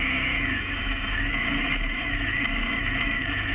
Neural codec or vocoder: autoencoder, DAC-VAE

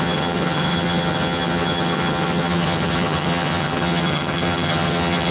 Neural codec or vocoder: vocoder, HiFi-GAN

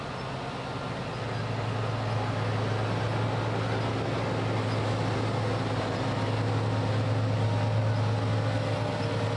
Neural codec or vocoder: none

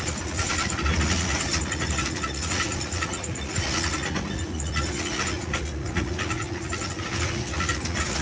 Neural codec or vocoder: vocoder, Vocos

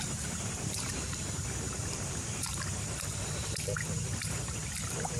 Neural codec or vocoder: vocoder, BigVGAN v2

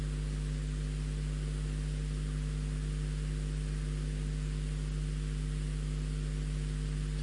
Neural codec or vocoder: none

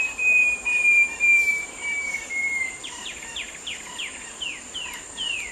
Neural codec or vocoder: vocoder, BigVGAN v2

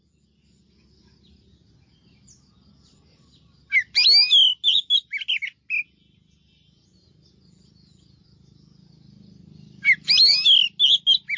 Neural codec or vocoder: none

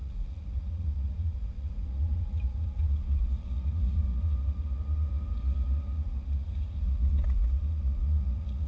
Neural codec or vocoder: vocoder, Vocos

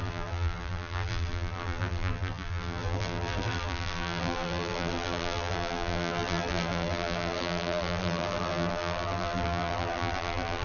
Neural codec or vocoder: vocoder, BigVGAN v2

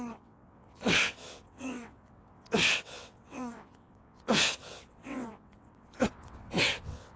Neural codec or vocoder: vocoder, WaveNeXt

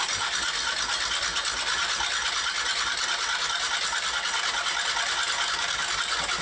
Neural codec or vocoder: none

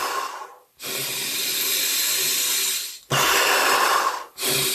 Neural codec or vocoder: none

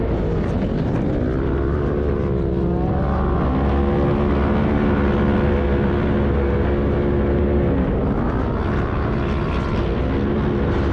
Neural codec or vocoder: none